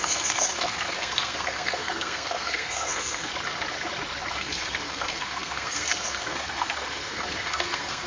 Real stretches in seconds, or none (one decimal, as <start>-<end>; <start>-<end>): 3.3-4.3